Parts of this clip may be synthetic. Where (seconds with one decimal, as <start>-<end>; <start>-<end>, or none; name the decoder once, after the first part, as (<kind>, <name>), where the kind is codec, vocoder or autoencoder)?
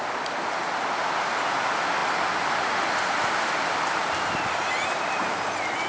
none